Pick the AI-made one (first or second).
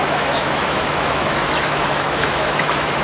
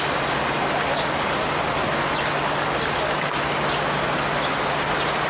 first